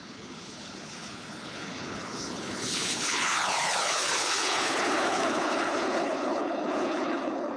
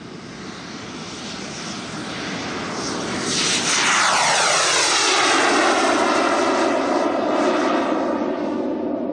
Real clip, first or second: second